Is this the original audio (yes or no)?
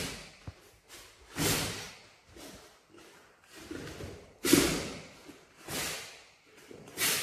yes